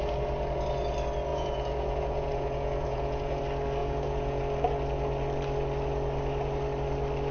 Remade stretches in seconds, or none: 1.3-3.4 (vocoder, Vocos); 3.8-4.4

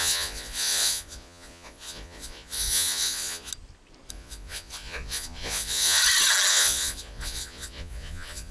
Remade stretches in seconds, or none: 0.0-3.5 (vocoder, Vocos); 4.1-6.0; 6.5-8.5

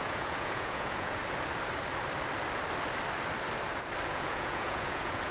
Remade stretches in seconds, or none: 0.0-1.2 (vocoder, Vocos); 4.1-5.3

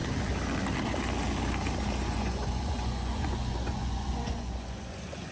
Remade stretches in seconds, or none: 2.0-5.3 (vocoder, Vocos)

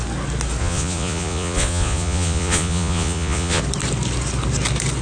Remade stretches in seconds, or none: 0.6-3.6 (vocoder, Vocos)